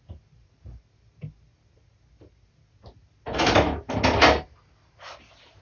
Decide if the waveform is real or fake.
real